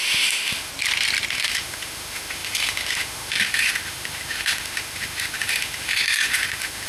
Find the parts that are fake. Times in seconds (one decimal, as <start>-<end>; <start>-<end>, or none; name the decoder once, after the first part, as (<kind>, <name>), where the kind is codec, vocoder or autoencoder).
0.0-0.7 (autoencoder, DAC-VAE); 1.3-6.9